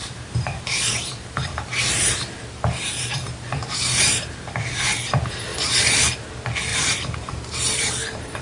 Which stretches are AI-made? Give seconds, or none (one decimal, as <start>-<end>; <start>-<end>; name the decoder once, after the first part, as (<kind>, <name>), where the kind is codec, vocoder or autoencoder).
0.0-4.5 (vocoder, BigVGAN v2); 5.5-6.3; 6.7-8.4